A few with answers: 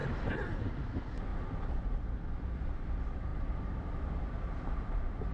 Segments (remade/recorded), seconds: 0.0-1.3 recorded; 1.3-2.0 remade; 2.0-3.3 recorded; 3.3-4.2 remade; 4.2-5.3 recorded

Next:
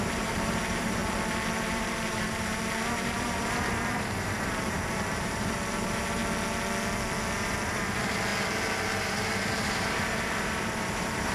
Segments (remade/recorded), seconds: 0.0-1.0 remade; 1.0-1.6 recorded; 1.6-6.2 remade; 6.2-7.3 recorded; 7.3-8.3 remade; 8.3-9.0 recorded; 9.0-11.3 remade

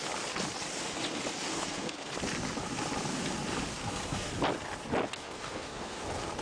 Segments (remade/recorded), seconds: 0.0-1.5 recorded; 1.5-2.1 remade; 2.1-3.7 recorded; 3.7-4.3 remade; 4.3-5.2 recorded; 5.2-6.0 remade; 6.0-6.4 recorded